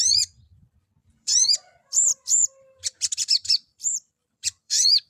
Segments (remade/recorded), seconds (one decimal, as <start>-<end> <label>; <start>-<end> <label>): 0.0-5.1 remade